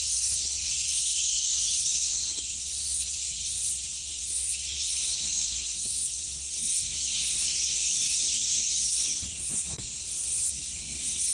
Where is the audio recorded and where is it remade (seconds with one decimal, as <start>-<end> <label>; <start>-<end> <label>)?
0.0-11.3 remade